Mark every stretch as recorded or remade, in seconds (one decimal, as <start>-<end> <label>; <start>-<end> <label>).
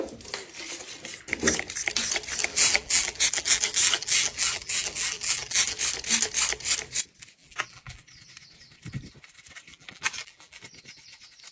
0.0-2.5 recorded; 2.5-5.8 remade; 5.8-7.4 recorded; 7.4-8.0 remade; 8.0-9.7 recorded; 9.7-10.6 remade; 10.6-11.5 recorded